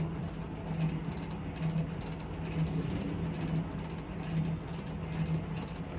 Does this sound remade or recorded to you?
recorded